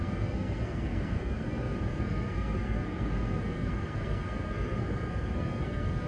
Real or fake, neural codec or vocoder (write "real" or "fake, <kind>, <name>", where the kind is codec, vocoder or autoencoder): fake, codec, SNAC